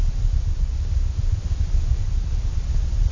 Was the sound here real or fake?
real